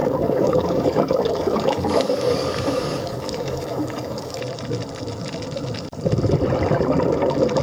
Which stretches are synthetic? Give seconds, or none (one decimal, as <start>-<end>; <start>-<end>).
0.0-4.4